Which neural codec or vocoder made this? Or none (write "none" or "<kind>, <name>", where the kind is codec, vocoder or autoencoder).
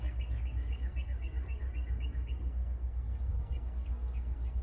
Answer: codec, SNAC